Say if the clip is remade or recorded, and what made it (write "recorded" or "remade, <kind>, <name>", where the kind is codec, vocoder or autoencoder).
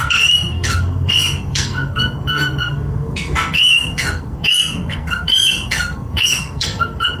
remade, codec, SNAC